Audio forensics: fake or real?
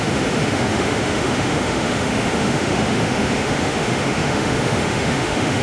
fake